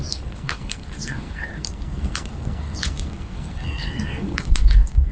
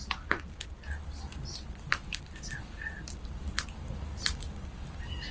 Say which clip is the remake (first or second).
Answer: first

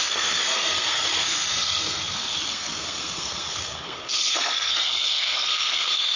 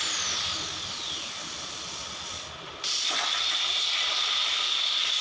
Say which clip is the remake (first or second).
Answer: first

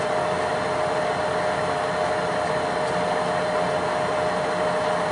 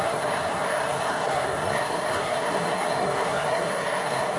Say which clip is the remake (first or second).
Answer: second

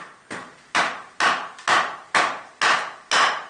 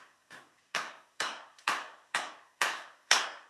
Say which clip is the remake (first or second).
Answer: second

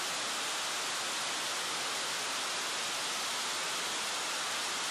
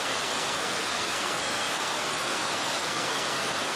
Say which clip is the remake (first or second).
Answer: second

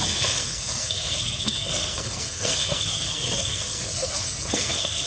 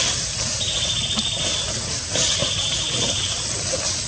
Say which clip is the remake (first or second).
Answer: first